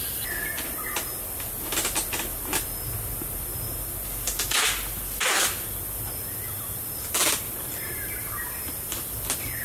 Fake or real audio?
real